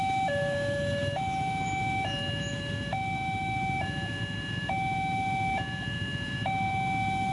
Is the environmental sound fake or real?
fake